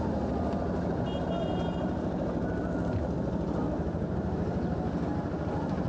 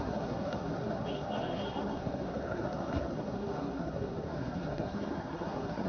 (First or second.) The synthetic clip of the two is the second